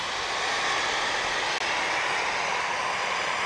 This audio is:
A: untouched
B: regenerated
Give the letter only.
A